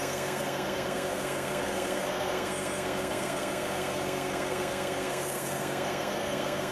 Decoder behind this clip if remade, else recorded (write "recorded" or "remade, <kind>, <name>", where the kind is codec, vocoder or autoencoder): remade, codec, SNAC